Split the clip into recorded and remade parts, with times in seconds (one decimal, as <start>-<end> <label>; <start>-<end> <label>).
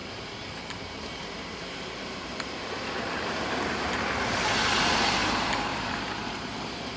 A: 0.0-7.0 remade